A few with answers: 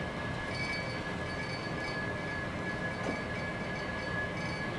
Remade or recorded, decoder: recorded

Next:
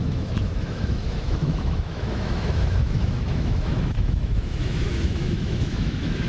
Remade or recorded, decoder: remade, autoencoder, DAC-VAE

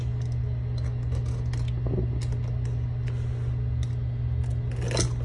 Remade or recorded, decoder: recorded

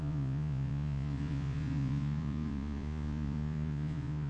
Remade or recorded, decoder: remade, vocoder, Vocos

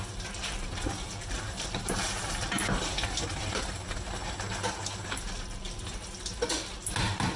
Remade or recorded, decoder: recorded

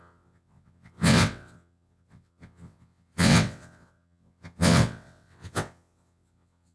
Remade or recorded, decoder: remade, vocoder, WaveNeXt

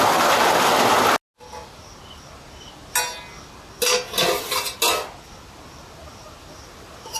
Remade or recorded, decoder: recorded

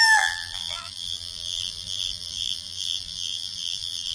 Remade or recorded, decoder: remade, vocoder, BigVGAN v2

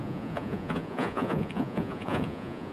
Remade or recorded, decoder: remade, vocoder, Vocos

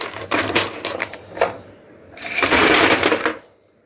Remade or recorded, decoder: remade, vocoder, BigVGAN v2